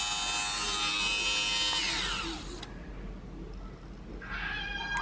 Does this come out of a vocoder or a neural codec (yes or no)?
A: no